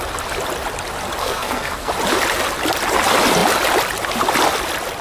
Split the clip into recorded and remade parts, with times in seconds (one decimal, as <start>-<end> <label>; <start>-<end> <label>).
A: 0.0-1.2 recorded; 1.2-1.9 remade; 1.9-5.0 recorded